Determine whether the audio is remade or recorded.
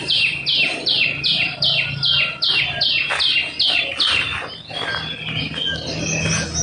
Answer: recorded